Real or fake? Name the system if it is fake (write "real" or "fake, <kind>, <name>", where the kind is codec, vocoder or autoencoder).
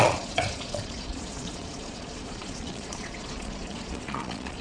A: fake, vocoder, Vocos